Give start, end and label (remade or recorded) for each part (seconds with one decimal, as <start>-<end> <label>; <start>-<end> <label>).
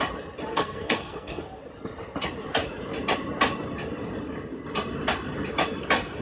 0.0-0.5 recorded; 0.5-1.4 remade; 1.4-6.2 recorded